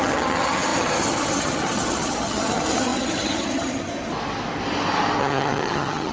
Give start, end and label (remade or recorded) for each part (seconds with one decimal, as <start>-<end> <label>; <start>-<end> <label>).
0.0-3.9 remade; 3.9-5.2 recorded; 5.2-6.1 remade